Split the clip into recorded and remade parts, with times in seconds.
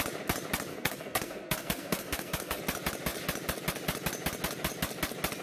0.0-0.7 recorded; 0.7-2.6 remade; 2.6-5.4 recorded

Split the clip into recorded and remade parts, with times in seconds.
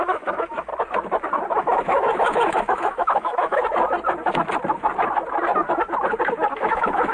0.0-0.7 remade; 0.7-1.6 recorded; 1.6-3.6 remade; 3.6-6.6 recorded; 6.6-7.1 remade